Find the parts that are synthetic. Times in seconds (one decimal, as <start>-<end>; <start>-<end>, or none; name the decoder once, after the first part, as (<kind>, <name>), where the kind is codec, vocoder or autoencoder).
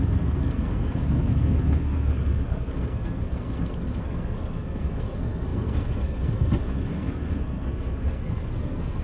0.0-9.0 (codec, SNAC)